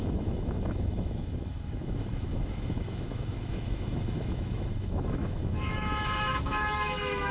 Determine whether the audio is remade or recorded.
remade